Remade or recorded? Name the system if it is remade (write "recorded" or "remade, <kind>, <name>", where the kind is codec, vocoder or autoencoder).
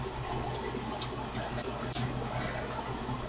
recorded